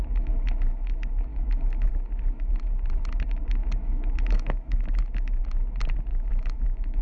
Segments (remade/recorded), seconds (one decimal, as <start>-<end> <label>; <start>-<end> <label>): 0.0-1.3 recorded; 1.3-1.9 remade; 1.9-3.6 recorded; 3.6-5.4 remade; 5.4-6.1 recorded; 6.1-7.0 remade